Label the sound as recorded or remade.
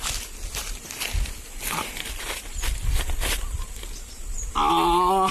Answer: recorded